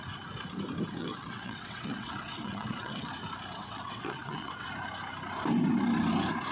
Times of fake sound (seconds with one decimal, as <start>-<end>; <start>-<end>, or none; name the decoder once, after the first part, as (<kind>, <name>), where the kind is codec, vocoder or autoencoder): 1.0-3.1 (vocoder, WaveNeXt); 3.6-4.7